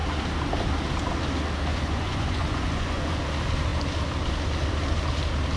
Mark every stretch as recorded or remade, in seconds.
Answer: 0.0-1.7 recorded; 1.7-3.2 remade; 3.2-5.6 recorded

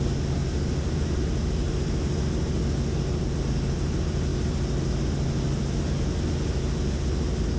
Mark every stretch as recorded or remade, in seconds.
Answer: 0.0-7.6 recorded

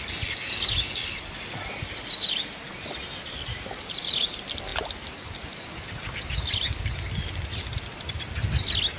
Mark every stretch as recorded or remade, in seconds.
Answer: 0.0-9.0 recorded